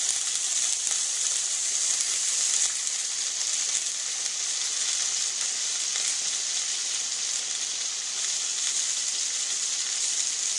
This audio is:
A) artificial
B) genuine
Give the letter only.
B